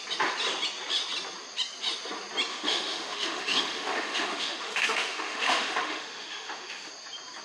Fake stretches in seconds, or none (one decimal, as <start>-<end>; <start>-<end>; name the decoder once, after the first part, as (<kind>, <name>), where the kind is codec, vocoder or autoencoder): 2.5-6.9 (autoencoder, DAC-VAE)